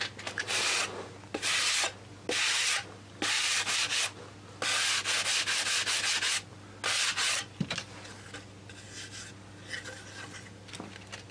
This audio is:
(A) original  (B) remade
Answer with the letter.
A